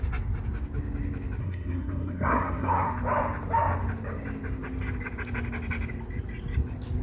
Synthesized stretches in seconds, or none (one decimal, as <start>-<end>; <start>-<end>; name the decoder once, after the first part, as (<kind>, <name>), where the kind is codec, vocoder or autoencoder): 1.4-2.9 (codec, SNAC)